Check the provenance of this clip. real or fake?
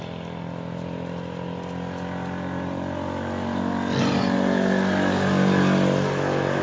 real